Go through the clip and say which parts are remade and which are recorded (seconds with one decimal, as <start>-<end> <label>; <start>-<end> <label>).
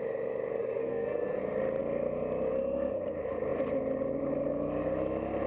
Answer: 0.0-0.6 recorded; 0.6-1.4 remade; 1.4-5.5 recorded